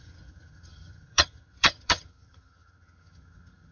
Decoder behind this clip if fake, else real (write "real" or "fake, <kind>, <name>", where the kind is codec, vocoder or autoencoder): fake, vocoder, HiFi-GAN